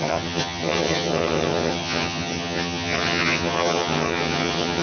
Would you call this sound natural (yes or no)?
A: no